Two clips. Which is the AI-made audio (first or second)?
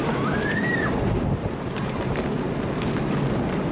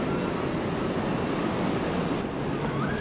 first